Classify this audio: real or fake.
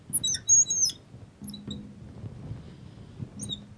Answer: real